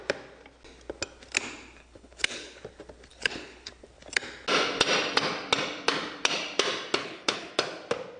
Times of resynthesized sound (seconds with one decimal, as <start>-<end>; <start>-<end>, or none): 1.8-2.6; 3.1-3.7; 7.0-7.5